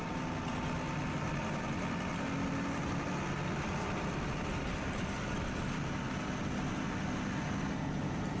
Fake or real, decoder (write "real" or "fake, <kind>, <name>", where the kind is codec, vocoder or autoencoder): real